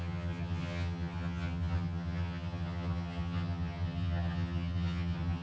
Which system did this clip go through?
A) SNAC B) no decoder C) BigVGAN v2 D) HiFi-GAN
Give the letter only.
D